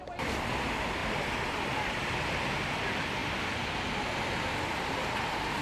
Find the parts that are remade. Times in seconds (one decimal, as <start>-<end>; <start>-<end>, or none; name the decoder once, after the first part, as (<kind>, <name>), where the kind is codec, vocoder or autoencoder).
1.0-2.0 (vocoder, BigVGAN v2); 3.2-4.5